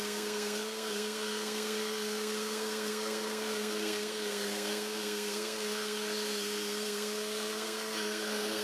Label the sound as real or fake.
fake